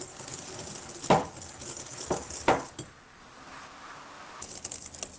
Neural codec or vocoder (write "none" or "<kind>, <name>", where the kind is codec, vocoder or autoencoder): none